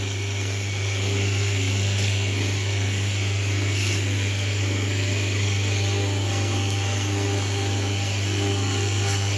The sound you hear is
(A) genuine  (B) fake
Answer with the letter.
B